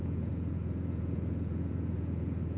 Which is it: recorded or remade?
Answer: remade